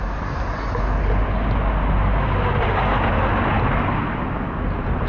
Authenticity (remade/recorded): recorded